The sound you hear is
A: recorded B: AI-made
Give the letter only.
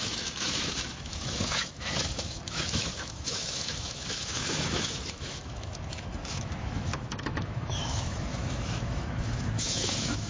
B